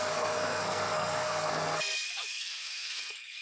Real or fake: fake